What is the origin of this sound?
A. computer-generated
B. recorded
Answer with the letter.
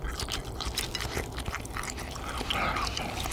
B